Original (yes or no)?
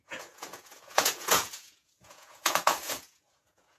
no